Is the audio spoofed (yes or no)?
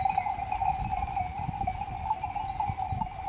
yes